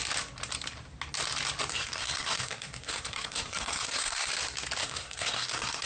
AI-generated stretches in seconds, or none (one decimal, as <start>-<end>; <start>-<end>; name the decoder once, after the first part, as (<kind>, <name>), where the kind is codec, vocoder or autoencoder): 1.7-4.3 (codec, SNAC); 4.8-5.9